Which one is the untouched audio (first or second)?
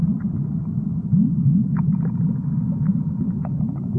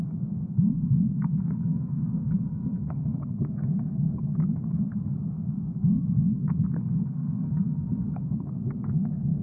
first